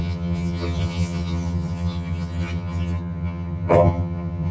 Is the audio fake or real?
fake